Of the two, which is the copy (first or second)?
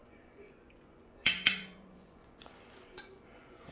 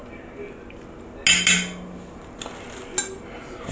first